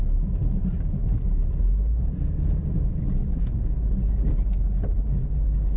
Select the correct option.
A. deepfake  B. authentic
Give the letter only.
B